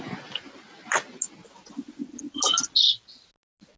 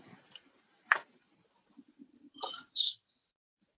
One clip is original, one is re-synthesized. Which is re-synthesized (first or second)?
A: second